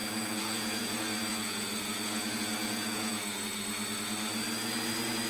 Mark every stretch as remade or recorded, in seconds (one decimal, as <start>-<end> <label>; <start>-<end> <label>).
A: 0.0-0.9 remade; 0.9-1.3 recorded; 1.3-3.6 remade; 3.6-5.3 recorded